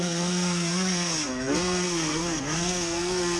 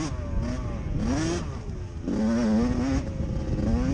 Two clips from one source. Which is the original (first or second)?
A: second